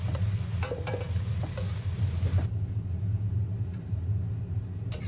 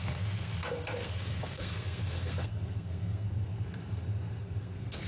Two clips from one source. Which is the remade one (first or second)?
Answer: second